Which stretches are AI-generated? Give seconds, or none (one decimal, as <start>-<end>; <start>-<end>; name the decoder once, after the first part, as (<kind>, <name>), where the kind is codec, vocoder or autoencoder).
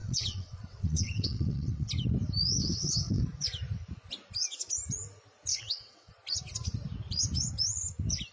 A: 0.0-1.9 (vocoder, WaveNeXt); 2.6-3.2; 5.5-6.1